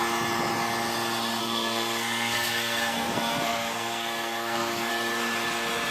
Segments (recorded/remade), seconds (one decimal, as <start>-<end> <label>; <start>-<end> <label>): 0.0-1.4 recorded; 1.4-4.9 remade; 4.9-5.9 recorded